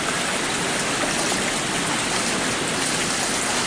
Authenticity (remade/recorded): recorded